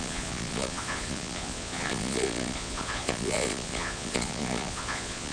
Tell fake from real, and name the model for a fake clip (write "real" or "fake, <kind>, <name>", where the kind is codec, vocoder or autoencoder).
fake, vocoder, Vocos